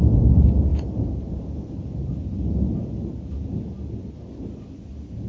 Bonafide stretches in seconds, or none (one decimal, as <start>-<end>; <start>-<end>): 0.0-5.3